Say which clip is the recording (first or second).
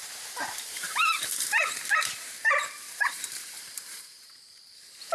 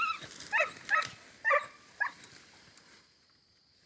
second